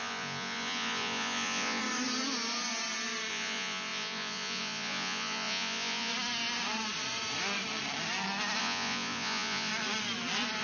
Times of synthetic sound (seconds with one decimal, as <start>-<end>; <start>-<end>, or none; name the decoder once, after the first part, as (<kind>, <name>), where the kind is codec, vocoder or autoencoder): 0.0-1.8 (vocoder, Vocos); 3.3-6.1; 8.6-9.7